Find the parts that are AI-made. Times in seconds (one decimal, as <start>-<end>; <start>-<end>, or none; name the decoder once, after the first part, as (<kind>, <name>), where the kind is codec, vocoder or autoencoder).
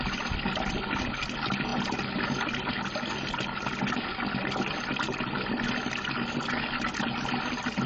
none